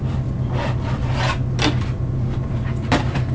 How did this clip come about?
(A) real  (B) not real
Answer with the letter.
A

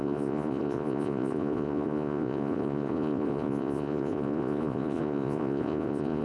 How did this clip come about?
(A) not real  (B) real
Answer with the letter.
A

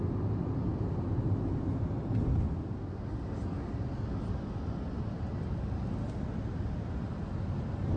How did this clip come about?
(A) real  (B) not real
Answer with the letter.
A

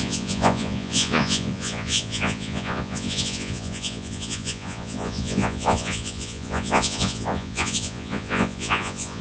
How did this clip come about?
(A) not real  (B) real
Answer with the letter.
A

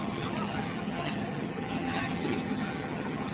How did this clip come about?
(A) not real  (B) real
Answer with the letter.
A